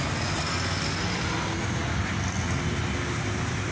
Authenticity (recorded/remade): recorded